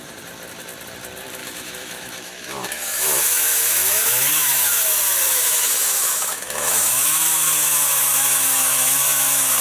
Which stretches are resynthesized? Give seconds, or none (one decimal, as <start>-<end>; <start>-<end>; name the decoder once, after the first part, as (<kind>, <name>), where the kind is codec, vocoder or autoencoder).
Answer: 1.4-4.8 (autoencoder, DAC-VAE); 5.3-9.6